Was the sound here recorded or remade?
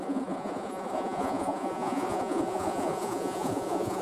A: remade